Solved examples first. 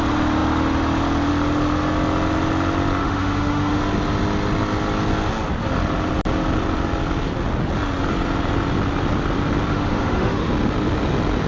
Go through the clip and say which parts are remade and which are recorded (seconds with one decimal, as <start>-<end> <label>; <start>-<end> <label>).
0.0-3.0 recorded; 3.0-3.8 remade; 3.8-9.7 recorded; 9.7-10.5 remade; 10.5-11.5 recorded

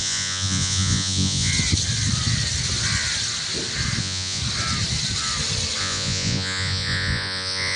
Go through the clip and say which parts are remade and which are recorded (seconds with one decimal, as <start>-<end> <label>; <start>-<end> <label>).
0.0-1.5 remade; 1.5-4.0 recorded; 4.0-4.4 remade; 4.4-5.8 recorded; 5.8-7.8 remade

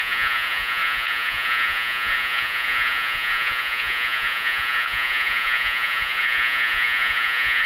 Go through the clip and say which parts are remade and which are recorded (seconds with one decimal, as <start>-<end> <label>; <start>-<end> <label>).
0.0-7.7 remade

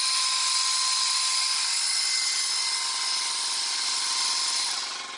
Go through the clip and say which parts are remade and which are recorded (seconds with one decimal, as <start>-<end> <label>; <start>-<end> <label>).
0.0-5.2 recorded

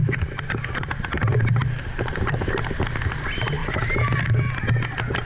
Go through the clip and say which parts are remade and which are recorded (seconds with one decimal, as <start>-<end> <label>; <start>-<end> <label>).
0.0-2.6 remade; 2.6-3.6 recorded; 3.6-4.6 remade; 4.6-5.3 recorded

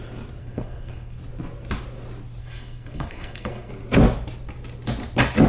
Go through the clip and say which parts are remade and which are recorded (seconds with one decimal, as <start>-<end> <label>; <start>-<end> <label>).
0.0-0.4 recorded; 0.4-1.2 remade; 1.2-2.4 recorded; 2.4-3.7 remade; 3.7-5.5 recorded

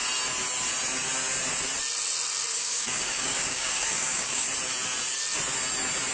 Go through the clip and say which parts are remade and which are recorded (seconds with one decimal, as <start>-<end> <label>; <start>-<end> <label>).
0.0-2.5 recorded; 2.5-4.5 remade; 4.5-6.1 recorded